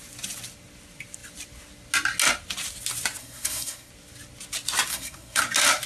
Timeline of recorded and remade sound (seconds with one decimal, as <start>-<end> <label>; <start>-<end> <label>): 0.0-3.2 recorded; 3.2-3.9 remade; 3.9-4.9 recorded; 4.9-5.4 remade; 5.4-5.9 recorded